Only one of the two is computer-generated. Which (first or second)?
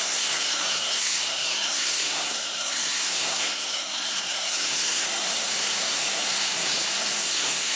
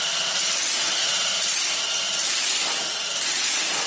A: first